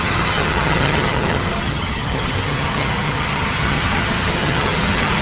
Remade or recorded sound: remade